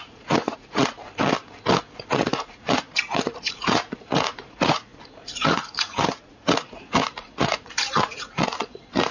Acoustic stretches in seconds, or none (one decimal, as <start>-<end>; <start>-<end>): 1.0-2.1